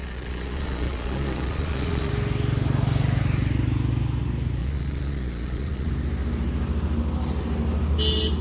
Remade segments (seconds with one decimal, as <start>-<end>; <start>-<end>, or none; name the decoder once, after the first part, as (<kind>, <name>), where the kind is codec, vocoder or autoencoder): 0.0-2.1 (vocoder, Vocos); 4.6-5.9